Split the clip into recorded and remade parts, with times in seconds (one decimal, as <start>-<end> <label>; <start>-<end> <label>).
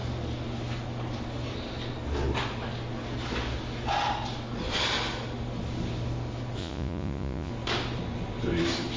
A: 0.0-6.6 recorded; 6.6-7.5 remade; 7.5-9.0 recorded